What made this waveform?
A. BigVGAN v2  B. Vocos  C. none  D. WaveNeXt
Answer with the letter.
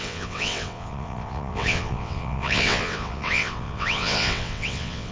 D